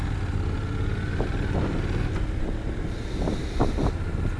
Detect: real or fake real